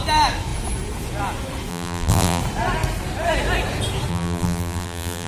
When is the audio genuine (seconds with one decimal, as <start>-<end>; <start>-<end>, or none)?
0.0-1.7; 2.4-4.1